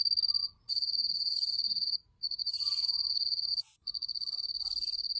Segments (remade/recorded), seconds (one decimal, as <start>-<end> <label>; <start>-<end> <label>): 0.0-0.4 recorded; 0.4-3.5 remade; 3.5-5.2 recorded